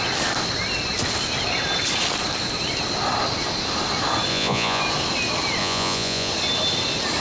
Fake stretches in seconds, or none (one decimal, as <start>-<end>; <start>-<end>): 4.3-4.8; 5.6-6.3